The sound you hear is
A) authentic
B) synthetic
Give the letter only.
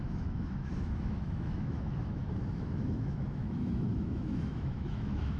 B